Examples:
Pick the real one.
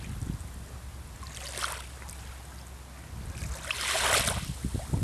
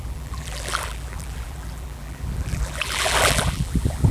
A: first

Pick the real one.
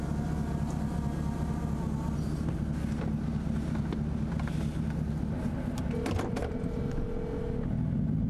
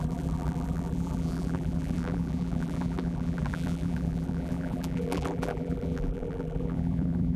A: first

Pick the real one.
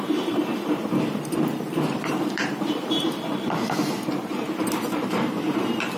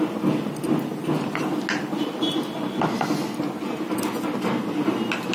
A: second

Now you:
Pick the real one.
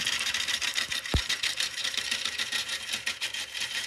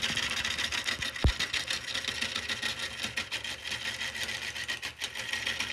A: second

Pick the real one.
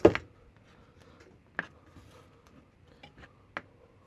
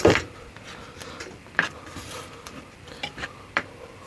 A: first